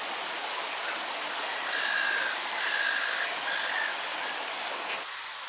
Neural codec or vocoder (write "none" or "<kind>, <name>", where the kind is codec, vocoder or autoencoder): none